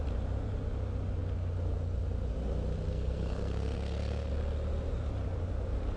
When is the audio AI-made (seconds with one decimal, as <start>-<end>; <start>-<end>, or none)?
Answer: 2.9-4.3

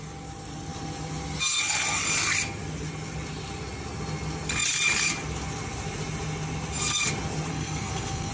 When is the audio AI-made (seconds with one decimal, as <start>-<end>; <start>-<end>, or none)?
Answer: 7.5-8.3

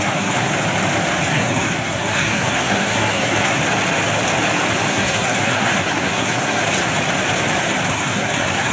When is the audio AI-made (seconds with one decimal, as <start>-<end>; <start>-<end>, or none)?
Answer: 0.0-0.5; 1.3-3.6; 4.9-6.6; 7.9-8.7

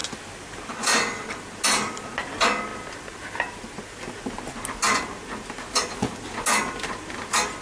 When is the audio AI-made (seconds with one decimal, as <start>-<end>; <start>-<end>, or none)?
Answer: none